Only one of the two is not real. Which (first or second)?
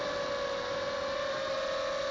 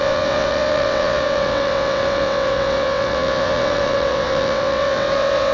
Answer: second